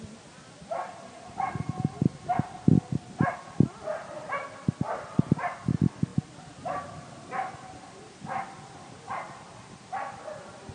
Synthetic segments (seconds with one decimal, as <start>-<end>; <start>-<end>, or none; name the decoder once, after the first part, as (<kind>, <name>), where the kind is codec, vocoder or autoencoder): none

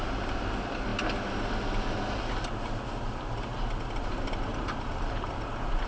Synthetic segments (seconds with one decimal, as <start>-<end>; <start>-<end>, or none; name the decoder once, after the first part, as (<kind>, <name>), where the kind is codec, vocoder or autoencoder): 4.5-5.9 (vocoder, BigVGAN v2)

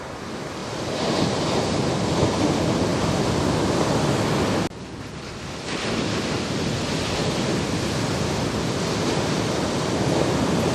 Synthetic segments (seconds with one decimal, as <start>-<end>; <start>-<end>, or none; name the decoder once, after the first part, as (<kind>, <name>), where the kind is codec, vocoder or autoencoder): 0.6-1.9 (vocoder, BigVGAN v2)

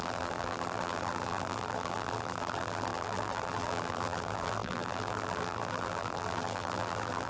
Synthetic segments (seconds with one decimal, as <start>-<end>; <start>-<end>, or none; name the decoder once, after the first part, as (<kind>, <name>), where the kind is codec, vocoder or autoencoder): 0.0-7.3 (vocoder, BigVGAN v2)